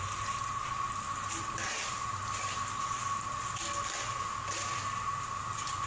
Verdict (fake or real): real